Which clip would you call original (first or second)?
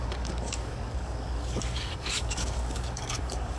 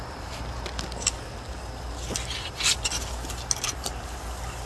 second